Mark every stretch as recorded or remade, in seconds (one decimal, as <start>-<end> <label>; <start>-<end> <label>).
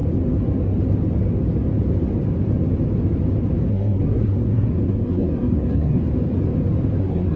0.0-3.7 recorded; 3.7-6.0 remade; 6.0-7.0 recorded; 7.0-7.4 remade